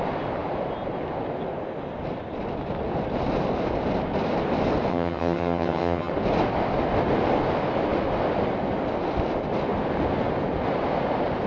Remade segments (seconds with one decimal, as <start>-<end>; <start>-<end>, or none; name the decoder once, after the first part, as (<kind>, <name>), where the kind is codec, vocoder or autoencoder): 4.9-6.1 (vocoder, HiFi-GAN)